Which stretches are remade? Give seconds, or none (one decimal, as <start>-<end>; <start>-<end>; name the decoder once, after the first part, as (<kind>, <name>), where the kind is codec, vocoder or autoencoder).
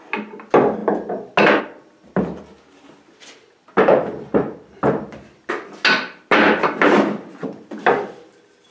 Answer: none